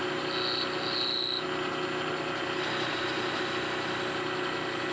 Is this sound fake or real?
real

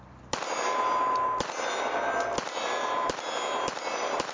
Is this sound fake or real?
real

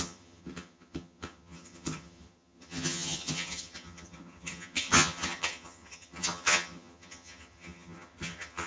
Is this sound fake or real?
fake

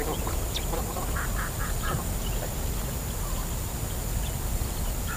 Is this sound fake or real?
real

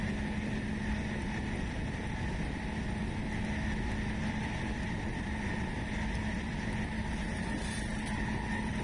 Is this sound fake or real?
real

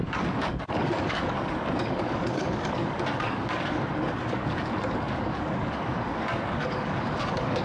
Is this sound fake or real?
fake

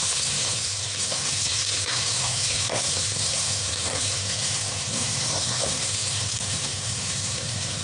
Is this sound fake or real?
fake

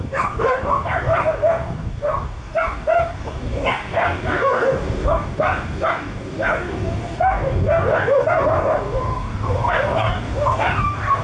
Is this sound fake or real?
fake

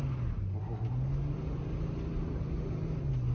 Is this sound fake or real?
real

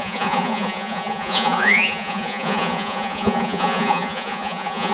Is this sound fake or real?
fake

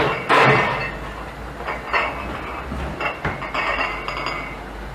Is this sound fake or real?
real